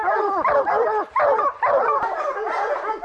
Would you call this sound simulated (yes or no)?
no